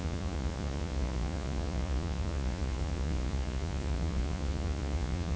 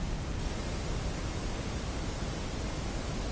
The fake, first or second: first